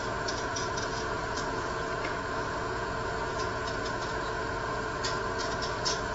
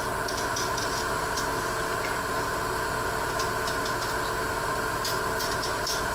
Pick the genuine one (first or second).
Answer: second